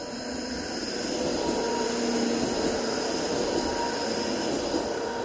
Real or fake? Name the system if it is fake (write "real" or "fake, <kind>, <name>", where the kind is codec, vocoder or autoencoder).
real